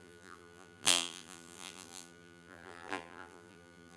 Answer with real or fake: fake